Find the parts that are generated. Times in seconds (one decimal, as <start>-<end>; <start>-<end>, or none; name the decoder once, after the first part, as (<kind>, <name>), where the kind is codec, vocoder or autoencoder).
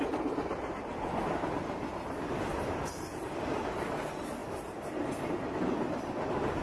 none